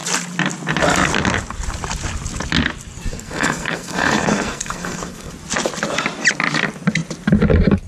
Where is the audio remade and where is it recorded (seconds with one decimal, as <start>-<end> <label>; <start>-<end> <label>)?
0.0-3.1 recorded; 3.1-5.3 remade; 5.3-7.9 recorded